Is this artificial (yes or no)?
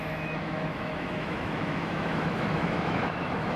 yes